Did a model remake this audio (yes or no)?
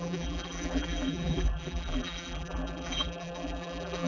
yes